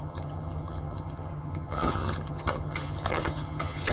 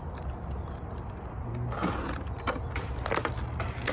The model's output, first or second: first